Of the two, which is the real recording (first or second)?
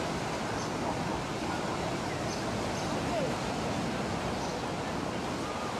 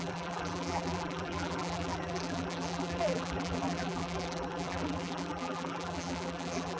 first